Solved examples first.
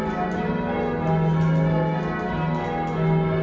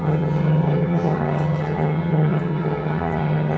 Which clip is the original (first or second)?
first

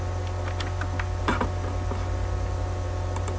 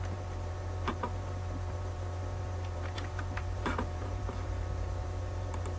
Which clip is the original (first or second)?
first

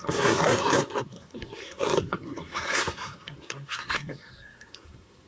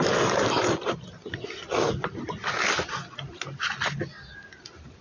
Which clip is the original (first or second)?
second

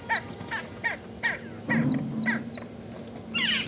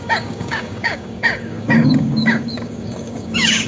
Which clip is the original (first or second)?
first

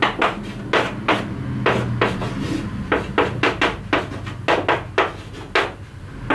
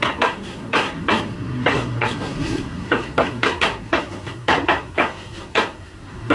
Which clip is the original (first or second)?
first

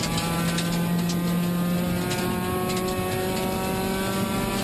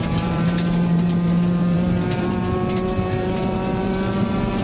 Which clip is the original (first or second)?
first